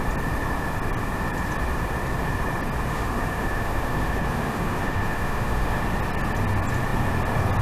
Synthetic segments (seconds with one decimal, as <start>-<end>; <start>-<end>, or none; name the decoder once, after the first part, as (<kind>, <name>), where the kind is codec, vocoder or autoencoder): 2.9-5.8 (autoencoder, DAC-VAE)